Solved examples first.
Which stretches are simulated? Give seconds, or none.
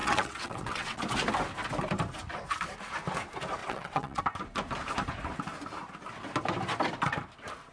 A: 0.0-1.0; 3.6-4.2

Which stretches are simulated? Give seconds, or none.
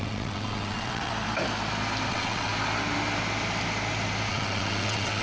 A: 0.0-1.1; 2.1-2.5; 4.3-5.2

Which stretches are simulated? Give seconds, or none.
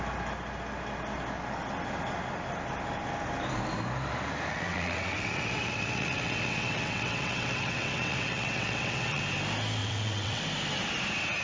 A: 4.5-9.2; 9.8-10.4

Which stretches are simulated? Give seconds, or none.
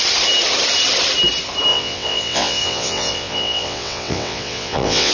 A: 1.7-5.1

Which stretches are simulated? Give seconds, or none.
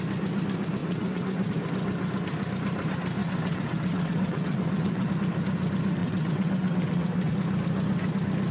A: 0.8-1.5; 3.2-5.1; 6.0-7.3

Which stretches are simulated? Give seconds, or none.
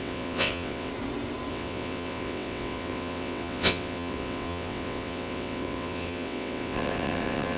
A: 0.0-0.9; 1.5-7.6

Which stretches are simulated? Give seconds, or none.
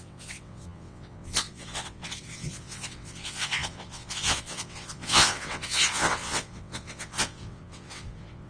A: 0.0-8.5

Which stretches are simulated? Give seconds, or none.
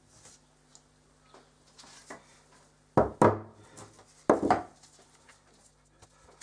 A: none